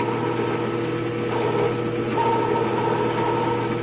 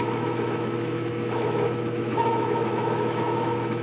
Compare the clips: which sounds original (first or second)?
first